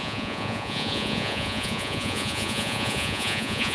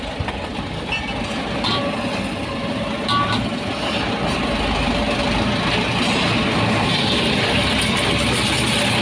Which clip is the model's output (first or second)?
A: first